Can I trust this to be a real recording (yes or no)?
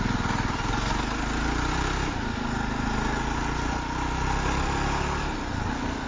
yes